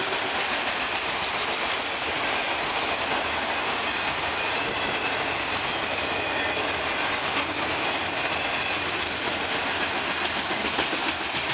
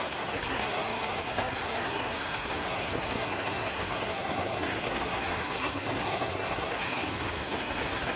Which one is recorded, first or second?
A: first